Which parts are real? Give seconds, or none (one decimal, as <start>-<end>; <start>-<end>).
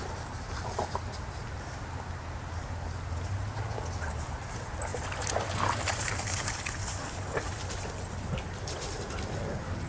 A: 0.0-9.9